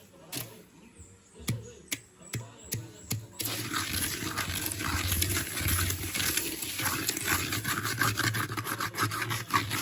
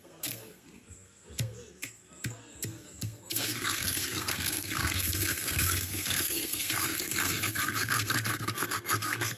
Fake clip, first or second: second